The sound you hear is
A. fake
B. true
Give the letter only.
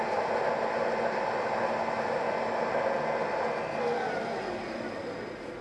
B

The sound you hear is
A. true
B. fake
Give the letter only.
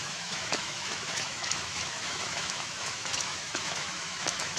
B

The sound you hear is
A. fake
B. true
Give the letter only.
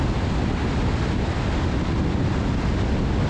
B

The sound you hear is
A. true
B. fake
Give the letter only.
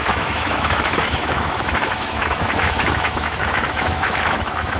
B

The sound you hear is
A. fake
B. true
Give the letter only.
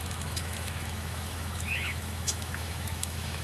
A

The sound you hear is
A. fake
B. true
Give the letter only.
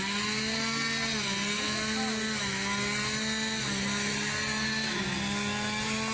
B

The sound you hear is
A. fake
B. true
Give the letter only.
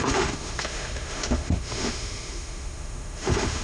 A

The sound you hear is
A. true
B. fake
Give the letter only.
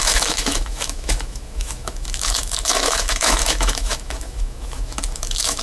B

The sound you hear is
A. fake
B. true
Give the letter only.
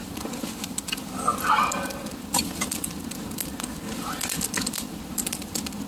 B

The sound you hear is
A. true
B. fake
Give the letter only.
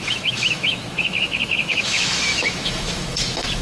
B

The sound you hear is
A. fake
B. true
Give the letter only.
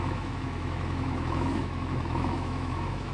A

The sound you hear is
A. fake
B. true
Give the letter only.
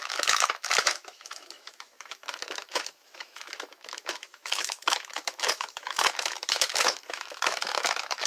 A